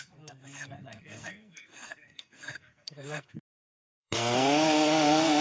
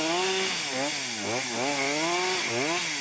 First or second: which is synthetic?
first